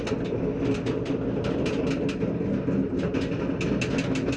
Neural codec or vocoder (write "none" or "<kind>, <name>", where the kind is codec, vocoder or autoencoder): none